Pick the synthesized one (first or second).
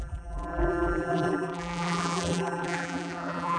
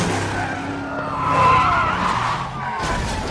first